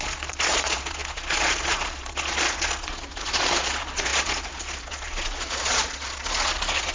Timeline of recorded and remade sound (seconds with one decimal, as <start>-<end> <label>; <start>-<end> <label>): 0.0-6.9 remade